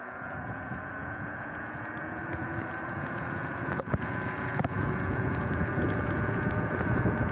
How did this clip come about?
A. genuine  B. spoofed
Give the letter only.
B